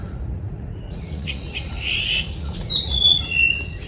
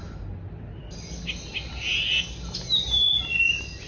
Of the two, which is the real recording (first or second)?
second